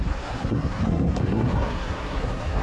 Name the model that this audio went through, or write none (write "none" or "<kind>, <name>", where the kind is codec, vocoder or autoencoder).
codec, SNAC